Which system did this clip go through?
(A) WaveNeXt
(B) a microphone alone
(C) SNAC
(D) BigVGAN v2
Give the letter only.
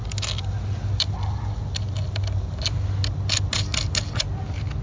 B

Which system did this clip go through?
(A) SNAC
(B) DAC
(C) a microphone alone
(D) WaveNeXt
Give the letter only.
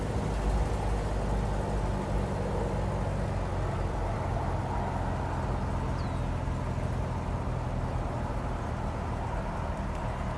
C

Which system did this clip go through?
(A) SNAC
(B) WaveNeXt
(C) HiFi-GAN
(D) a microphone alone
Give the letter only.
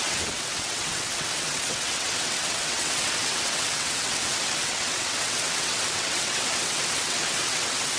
B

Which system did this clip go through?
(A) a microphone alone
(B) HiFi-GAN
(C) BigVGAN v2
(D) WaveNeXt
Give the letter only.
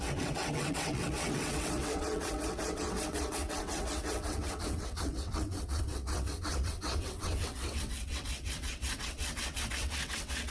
D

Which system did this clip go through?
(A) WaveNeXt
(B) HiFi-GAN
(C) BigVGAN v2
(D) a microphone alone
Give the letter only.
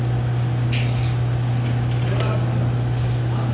D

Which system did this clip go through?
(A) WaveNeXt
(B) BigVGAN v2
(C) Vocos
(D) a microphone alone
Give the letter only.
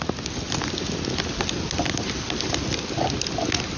D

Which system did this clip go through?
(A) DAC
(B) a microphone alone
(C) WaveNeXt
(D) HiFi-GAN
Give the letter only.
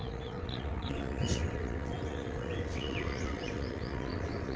C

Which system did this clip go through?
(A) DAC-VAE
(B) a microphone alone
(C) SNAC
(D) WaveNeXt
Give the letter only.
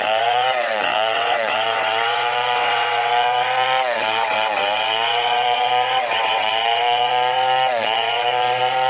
D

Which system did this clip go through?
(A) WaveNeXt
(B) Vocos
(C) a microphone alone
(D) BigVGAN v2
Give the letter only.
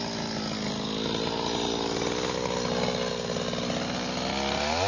C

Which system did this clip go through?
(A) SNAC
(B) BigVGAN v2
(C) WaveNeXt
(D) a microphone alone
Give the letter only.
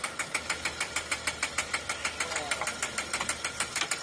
D